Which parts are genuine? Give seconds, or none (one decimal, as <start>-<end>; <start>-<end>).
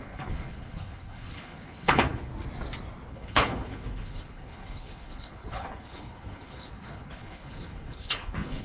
2.3-3.1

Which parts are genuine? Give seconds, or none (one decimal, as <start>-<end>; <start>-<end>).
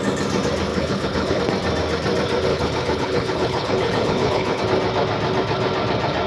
0.0-0.7; 1.4-2.5; 4.6-6.3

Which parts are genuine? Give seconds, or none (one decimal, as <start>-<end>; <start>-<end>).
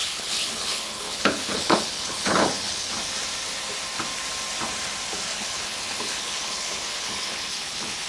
2.9-5.3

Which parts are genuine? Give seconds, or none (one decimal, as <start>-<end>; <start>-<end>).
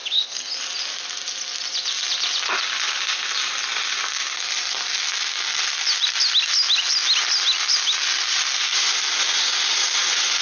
0.5-10.4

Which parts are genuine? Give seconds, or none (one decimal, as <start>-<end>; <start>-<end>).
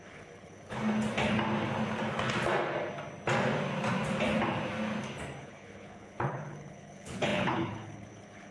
0.8-5.4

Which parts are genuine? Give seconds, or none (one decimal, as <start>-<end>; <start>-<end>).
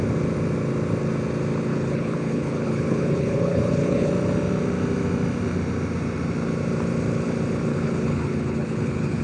0.0-1.7; 4.1-7.7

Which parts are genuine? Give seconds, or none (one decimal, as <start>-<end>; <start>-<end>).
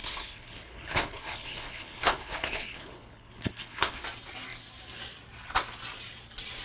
4.0-6.6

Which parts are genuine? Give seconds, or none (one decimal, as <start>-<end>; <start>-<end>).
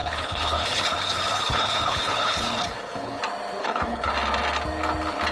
3.2-3.6; 4.1-5.3